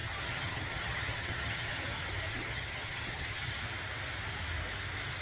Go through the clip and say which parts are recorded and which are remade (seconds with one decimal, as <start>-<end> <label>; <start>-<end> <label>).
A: 0.0-1.9 remade; 1.9-2.3 recorded; 2.3-3.6 remade; 3.6-5.2 recorded